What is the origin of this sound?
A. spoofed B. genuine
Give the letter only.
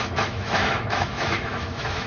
A